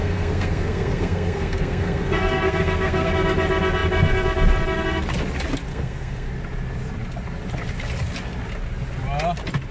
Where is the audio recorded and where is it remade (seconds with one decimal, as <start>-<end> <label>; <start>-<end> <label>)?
0.0-3.1 remade; 3.1-5.7 recorded; 5.7-6.3 remade; 6.3-9.7 recorded